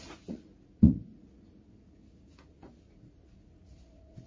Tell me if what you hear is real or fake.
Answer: fake